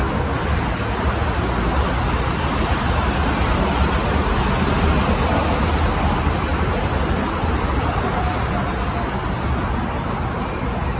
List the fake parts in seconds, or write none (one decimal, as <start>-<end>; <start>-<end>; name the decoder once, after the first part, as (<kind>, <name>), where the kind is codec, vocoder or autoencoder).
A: none